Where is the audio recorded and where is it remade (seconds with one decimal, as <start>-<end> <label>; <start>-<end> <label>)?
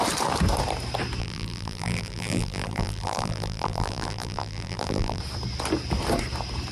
0.0-1.2 recorded; 1.2-5.2 remade; 5.2-6.7 recorded